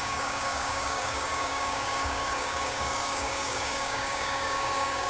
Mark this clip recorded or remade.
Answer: remade